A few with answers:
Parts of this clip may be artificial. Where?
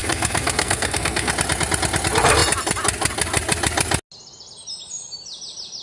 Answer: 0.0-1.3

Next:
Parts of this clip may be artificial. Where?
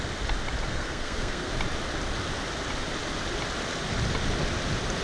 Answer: 0.7-1.5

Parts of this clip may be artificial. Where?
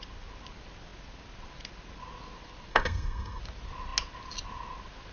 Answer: 2.7-3.4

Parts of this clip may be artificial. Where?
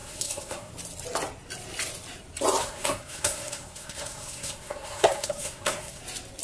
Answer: 0.0-0.7; 2.6-6.0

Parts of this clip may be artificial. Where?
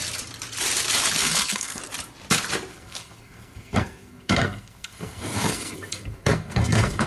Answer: 1.2-1.8; 2.7-7.1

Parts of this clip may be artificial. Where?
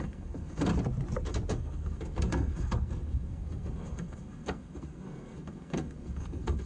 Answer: 0.0-0.7; 1.5-6.7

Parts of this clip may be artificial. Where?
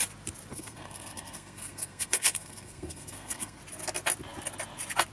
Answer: 0.5-3.6